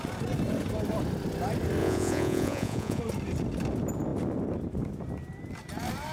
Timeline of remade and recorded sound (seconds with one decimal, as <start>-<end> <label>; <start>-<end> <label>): 0.0-1.8 recorded; 1.8-3.0 remade; 3.0-6.1 recorded